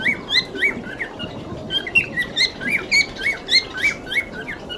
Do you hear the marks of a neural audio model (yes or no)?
no